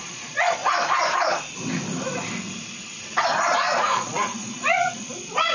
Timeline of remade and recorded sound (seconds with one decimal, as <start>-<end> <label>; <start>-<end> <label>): 0.0-0.6 remade; 0.6-3.4 recorded; 3.4-5.5 remade